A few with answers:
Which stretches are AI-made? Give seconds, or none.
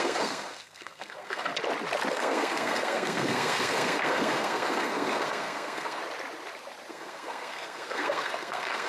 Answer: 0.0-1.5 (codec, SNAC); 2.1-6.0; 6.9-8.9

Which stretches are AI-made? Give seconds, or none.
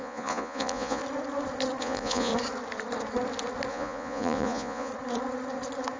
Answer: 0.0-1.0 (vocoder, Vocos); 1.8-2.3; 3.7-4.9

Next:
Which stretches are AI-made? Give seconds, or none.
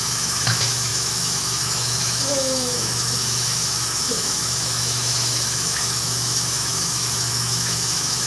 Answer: 0.0-8.3 (autoencoder, DAC-VAE)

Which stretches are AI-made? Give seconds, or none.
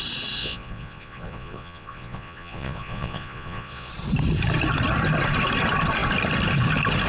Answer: 0.4-3.9 (vocoder, Vocos)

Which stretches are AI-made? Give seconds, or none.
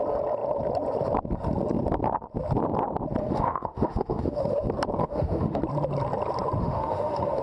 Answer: 3.2-4.4 (autoencoder, DAC-VAE); 5.0-5.6; 6.6-7.4